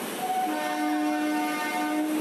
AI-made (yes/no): no